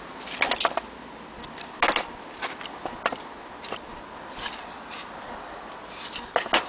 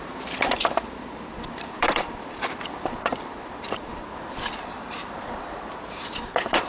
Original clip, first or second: first